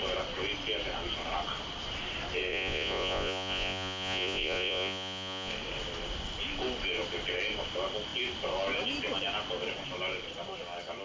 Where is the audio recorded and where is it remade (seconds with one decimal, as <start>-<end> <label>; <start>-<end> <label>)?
0.0-2.5 recorded; 2.5-5.5 remade; 5.5-11.0 recorded